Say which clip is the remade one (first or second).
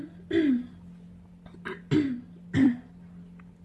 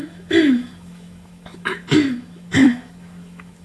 second